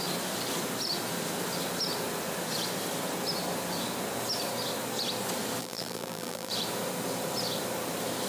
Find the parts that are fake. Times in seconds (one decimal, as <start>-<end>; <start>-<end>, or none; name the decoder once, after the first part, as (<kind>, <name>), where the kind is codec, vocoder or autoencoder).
5.6-6.5 (vocoder, BigVGAN v2)

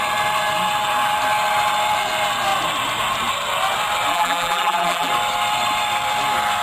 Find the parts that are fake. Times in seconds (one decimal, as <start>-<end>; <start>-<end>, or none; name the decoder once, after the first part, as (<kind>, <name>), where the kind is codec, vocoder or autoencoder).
4.1-5.1 (vocoder, BigVGAN v2)

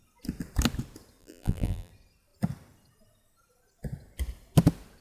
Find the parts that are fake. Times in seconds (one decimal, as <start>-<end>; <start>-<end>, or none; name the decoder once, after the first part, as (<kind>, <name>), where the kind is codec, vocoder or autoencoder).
1.2-1.9 (vocoder, BigVGAN v2)

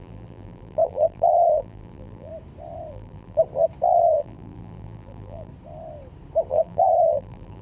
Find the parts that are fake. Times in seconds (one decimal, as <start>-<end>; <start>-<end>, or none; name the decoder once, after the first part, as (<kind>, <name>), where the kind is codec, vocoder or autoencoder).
0.0-2.3 (vocoder, BigVGAN v2); 2.9-3.4; 3.9-5.5; 6.5-7.6

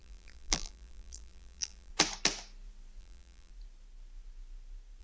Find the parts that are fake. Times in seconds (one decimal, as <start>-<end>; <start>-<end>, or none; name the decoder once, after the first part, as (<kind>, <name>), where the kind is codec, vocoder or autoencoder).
0.0-1.9 (vocoder, BigVGAN v2); 3.0-3.5

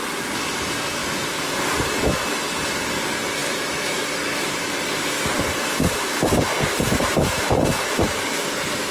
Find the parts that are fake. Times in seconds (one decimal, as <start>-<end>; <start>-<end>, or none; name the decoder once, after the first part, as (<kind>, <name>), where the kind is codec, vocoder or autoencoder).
none

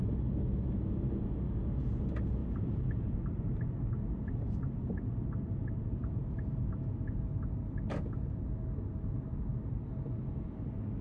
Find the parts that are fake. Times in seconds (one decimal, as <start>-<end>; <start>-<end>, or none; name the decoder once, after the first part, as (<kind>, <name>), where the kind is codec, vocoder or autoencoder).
2.4-3.7 (vocoder, BigVGAN v2); 6.0-6.6